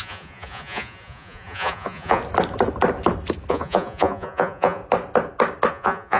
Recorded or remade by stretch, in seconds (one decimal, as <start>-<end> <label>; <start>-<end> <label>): 0.0-2.2 remade; 2.2-3.5 recorded; 3.5-4.8 remade; 4.8-5.7 recorded; 5.7-6.2 remade